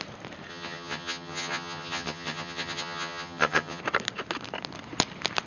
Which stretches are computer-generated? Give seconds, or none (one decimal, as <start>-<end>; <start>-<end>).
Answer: 0.5-3.8